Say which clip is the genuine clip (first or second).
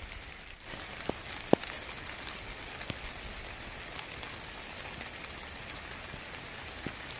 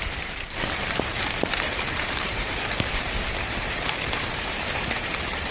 first